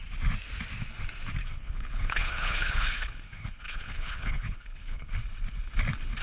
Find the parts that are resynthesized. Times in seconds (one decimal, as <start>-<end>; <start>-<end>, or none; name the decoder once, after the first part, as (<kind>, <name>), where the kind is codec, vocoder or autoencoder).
1.4-5.1 (codec, HILCodec)